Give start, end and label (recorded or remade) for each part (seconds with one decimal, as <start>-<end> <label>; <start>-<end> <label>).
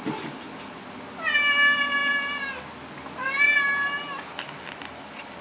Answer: 0.0-5.4 recorded